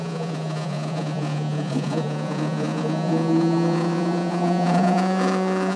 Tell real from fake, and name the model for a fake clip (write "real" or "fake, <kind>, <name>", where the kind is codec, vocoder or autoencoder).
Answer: fake, vocoder, Vocos